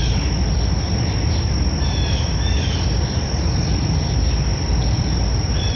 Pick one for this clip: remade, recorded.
recorded